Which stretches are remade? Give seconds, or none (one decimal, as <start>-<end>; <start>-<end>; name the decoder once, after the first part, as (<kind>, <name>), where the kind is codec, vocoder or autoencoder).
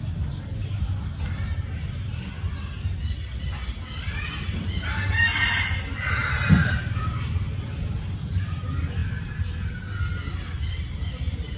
none